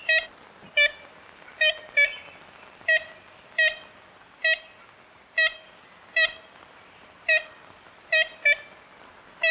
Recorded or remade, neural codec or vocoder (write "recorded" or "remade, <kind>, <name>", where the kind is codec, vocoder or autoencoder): recorded